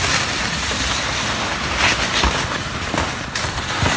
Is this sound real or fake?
real